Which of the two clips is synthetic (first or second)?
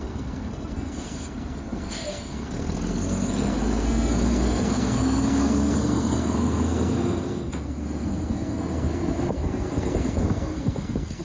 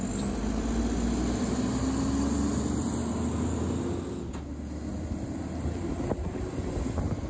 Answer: first